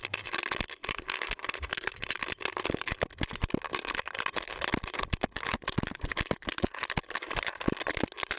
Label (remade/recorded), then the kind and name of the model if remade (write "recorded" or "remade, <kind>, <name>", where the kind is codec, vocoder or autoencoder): recorded